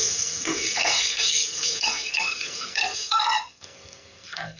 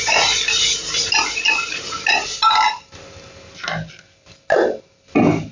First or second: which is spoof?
first